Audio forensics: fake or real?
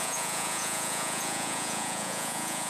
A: fake